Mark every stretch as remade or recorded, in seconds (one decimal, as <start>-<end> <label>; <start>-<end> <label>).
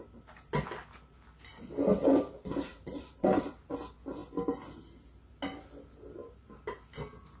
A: 0.0-2.7 recorded; 2.7-3.7 remade; 3.7-6.2 recorded; 6.2-7.0 remade; 7.0-7.4 recorded